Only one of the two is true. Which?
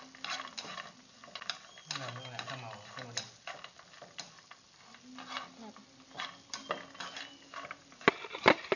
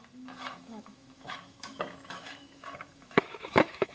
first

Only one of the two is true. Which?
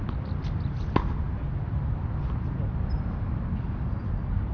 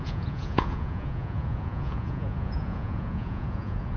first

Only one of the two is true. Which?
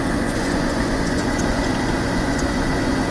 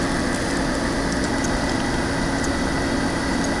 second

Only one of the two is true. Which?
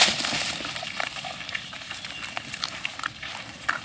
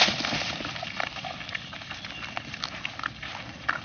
second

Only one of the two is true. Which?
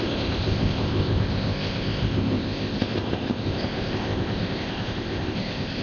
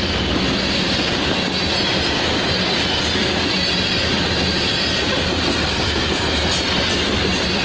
second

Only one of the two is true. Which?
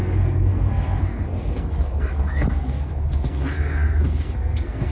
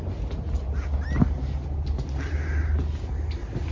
second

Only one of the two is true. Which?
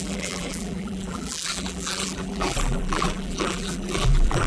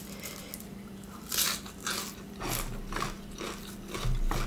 second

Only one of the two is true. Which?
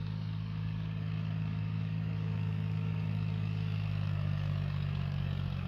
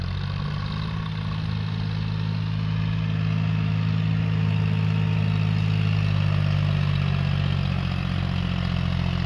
second